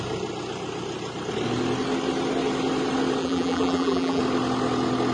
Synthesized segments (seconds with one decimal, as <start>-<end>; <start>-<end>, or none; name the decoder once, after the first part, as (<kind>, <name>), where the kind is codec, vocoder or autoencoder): 3.2-4.2 (vocoder, BigVGAN v2)